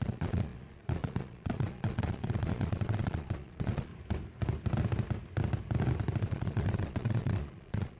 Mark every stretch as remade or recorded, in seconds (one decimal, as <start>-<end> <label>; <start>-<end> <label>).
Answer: 0.0-3.9 remade; 3.9-6.2 recorded; 6.2-8.0 remade